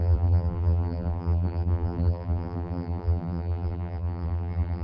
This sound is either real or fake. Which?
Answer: fake